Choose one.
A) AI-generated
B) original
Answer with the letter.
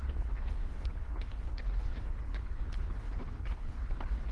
A